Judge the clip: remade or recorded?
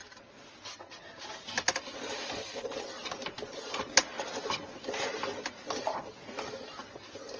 recorded